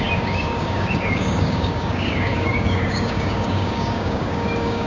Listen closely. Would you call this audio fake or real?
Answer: fake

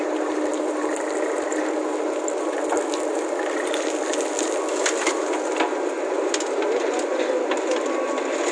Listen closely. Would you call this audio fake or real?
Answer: real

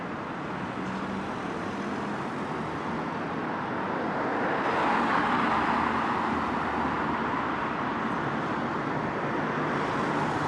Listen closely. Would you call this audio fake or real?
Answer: real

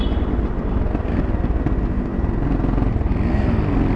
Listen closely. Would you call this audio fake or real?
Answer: real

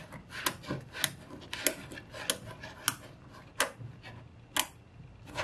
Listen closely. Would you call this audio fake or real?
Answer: real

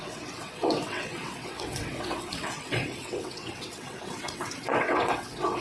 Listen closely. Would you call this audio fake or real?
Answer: fake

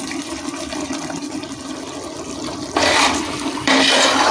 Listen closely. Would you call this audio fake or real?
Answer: fake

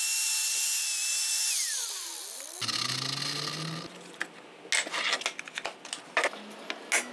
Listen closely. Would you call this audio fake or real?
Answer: real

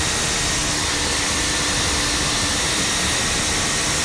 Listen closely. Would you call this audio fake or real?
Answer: real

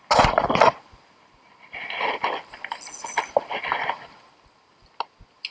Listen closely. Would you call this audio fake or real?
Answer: real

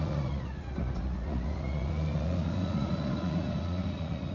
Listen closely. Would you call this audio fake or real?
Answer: fake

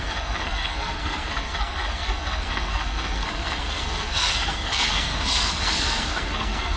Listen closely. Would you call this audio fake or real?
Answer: fake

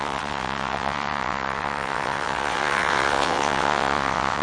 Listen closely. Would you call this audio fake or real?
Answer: fake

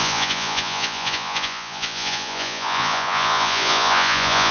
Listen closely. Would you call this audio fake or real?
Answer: fake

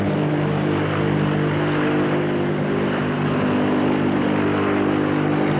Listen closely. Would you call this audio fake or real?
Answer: fake